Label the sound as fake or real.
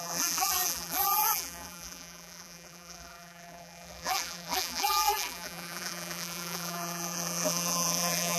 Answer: fake